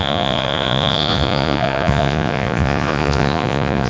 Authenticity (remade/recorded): remade